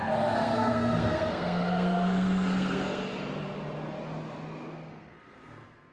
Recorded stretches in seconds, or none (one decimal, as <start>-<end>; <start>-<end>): 3.0-4.9